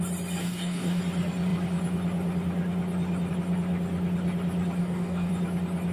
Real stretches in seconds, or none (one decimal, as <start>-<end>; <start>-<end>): 0.0-0.4; 1.0-4.8; 5.3-5.9